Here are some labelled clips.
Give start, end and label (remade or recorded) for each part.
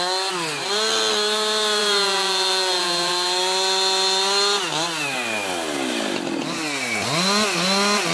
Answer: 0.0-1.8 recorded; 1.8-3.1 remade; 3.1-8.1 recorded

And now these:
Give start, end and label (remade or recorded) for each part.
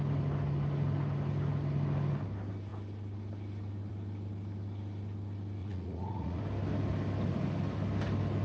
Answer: 0.0-5.6 recorded; 5.6-6.4 remade; 6.4-8.4 recorded